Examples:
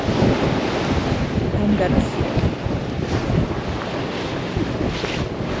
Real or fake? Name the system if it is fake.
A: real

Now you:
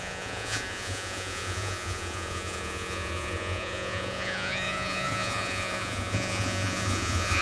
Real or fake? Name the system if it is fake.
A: fake, vocoder, Vocos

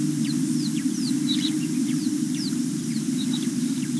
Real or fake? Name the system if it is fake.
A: fake, vocoder, BigVGAN v2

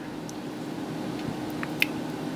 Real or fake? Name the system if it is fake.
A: real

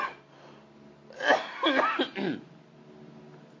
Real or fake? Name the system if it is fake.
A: real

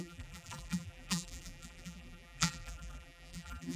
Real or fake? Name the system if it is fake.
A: fake, vocoder, BigVGAN v2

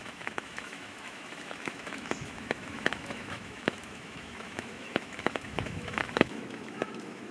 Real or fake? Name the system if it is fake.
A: fake, autoencoder, DAC-VAE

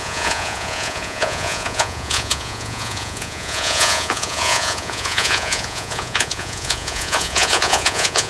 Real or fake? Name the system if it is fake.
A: fake, vocoder, Vocos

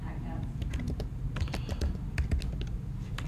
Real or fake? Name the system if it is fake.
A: real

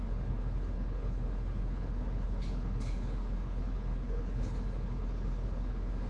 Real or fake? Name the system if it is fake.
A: fake, codec, HILCodec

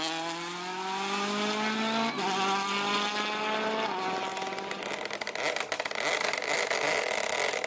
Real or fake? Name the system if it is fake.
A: real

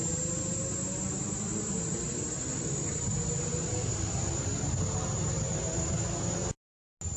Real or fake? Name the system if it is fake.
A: real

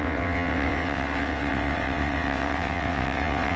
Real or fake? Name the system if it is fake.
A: fake, vocoder, WaveNeXt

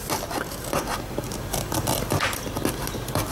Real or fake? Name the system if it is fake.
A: real